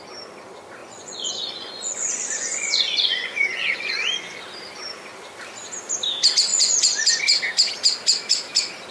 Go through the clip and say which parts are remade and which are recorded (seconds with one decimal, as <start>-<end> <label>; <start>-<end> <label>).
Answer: 0.0-0.8 recorded; 0.8-4.4 remade; 4.4-6.5 recorded; 6.5-7.2 remade; 7.2-8.9 recorded